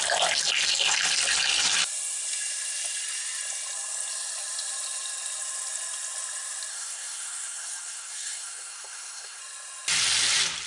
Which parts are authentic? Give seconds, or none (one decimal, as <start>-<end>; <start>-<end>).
0.0-6.7; 9.4-10.7